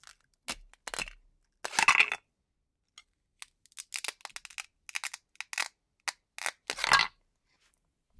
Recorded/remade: recorded